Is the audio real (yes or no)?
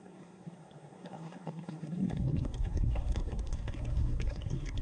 no